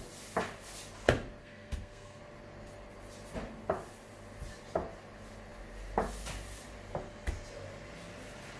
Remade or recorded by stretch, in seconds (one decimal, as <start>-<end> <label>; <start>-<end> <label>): 0.0-1.4 recorded; 1.4-2.2 remade; 2.2-8.6 recorded